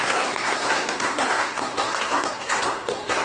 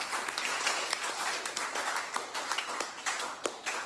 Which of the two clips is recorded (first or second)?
second